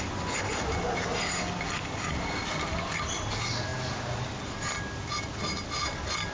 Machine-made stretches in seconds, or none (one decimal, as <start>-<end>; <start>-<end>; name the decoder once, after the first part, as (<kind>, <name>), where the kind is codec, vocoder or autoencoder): none